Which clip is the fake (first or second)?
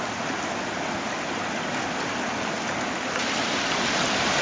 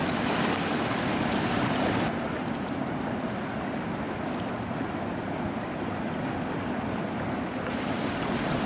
second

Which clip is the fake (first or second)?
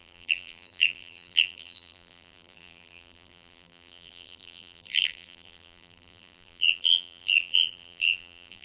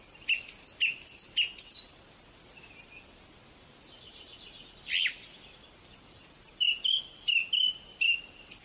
first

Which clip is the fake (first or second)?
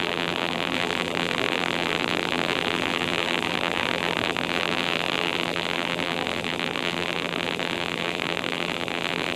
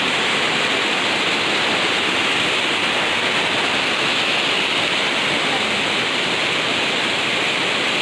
first